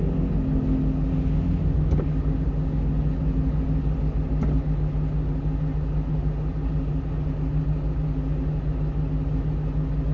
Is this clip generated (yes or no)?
no